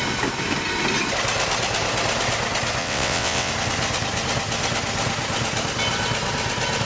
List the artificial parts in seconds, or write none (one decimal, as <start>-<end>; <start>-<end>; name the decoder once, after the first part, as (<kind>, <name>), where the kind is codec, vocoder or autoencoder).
2.8-3.5 (vocoder, WaveNeXt)